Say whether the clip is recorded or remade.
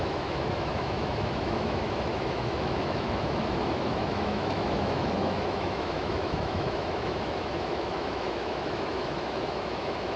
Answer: remade